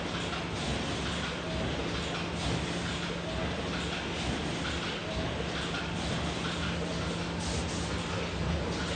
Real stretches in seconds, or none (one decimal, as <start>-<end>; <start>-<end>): 0.0-9.0